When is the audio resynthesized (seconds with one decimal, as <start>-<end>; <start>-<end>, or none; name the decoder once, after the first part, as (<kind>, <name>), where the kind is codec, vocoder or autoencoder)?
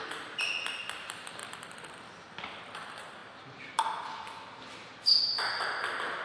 none